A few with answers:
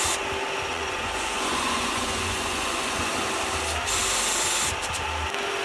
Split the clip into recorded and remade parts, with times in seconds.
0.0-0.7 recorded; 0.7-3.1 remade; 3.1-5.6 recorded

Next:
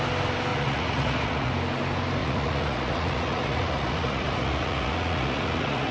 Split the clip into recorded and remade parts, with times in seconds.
0.0-0.5 recorded; 0.5-1.5 remade; 1.5-2.2 recorded; 2.2-5.9 remade

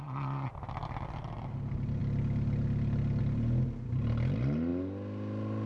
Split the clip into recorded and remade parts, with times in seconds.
0.0-5.7 recorded

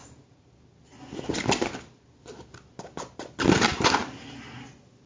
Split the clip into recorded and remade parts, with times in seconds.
0.0-5.1 recorded

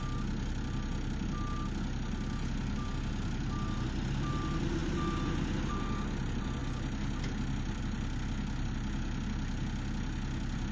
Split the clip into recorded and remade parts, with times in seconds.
0.0-10.7 recorded

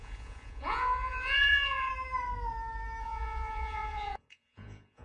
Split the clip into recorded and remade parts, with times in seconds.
0.0-1.9 remade; 1.9-3.0 recorded; 3.0-5.0 remade

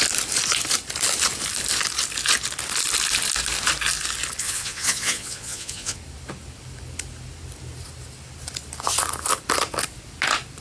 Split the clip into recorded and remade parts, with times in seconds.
0.0-4.4 recorded; 4.4-6.0 remade; 6.0-10.6 recorded

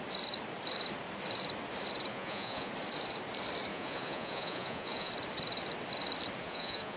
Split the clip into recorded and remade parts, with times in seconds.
0.0-2.1 recorded; 2.1-2.7 remade; 2.7-3.7 recorded; 3.7-5.1 remade; 5.1-6.4 recorded; 6.4-7.0 remade